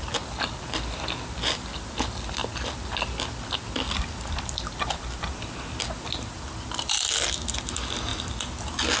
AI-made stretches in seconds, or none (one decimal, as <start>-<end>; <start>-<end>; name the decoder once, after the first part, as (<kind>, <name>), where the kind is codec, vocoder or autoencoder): none